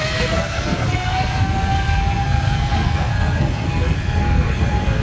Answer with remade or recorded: remade